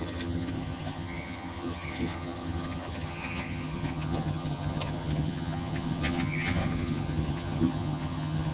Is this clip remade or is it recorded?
remade